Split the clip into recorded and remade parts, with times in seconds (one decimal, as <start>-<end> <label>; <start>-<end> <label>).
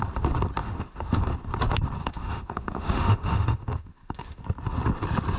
0.0-0.6 recorded; 0.6-1.2 remade; 1.2-2.0 recorded; 2.0-4.4 remade; 4.4-5.4 recorded